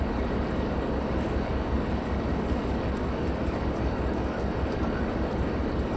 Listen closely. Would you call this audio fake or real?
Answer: fake